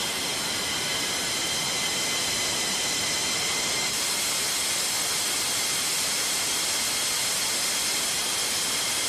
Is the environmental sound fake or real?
real